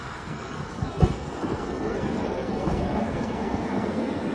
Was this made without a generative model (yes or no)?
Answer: no